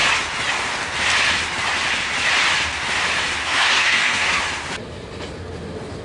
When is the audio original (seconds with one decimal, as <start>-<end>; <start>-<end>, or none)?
0.0-3.4; 4.4-6.0